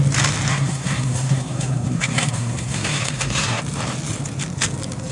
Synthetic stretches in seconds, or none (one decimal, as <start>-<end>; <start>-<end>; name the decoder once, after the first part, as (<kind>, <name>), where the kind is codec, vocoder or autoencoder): 0.5-3.6 (codec, SNAC)